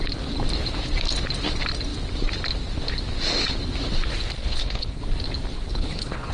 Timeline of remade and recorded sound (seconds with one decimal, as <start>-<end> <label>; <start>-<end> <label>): 0.0-4.4 recorded; 4.4-5.0 remade; 5.0-5.7 recorded; 5.7-6.3 remade